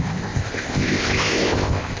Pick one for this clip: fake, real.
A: fake